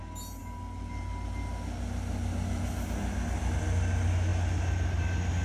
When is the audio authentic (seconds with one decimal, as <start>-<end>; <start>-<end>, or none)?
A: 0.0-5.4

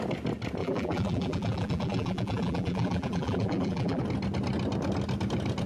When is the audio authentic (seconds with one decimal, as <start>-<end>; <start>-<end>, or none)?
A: 0.0-0.6; 4.0-5.7

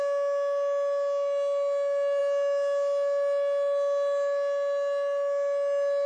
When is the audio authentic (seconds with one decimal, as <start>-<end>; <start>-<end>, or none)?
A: 0.0-6.1

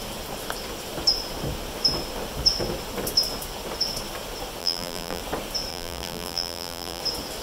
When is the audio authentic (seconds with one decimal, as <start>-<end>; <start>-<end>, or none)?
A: 0.0-4.6; 5.2-5.7; 7.0-7.4

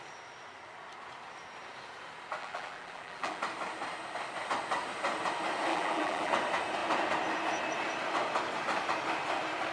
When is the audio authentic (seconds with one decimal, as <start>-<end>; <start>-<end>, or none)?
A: 0.0-2.4; 3.4-5.7; 6.3-9.7

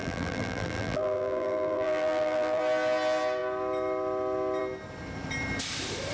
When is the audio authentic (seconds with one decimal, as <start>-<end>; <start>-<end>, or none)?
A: 2.6-6.1

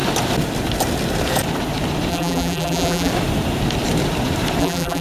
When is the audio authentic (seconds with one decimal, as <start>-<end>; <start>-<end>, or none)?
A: 0.0-2.1; 3.1-4.6